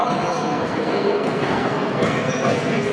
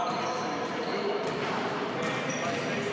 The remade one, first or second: first